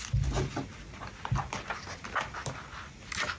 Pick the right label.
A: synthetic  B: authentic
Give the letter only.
B